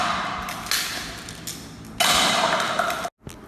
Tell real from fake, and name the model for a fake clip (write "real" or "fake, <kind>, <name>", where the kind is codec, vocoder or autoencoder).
real